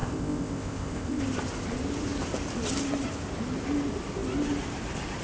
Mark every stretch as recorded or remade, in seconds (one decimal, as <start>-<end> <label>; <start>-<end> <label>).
0.0-1.2 remade; 1.2-5.2 recorded